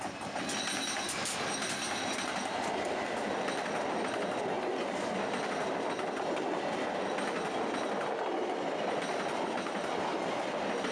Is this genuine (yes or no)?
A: yes